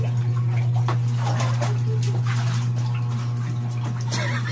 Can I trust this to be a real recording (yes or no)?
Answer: yes